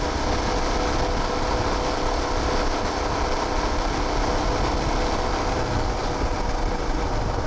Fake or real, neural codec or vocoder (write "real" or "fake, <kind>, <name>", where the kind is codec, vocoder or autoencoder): real